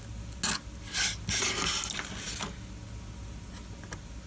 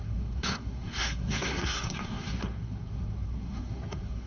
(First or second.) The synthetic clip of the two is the second